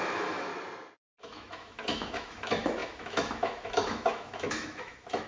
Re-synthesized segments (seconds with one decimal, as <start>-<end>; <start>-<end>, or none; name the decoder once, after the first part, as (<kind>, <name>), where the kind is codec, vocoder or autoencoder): 0.0-0.5 (autoencoder, DAC-VAE); 1.2-5.3